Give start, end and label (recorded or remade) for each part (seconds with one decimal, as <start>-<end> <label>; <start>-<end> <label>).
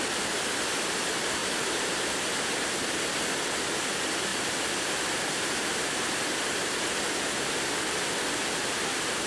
0.0-1.4 recorded; 1.4-2.1 remade; 2.1-4.3 recorded; 4.3-6.1 remade; 6.1-9.3 recorded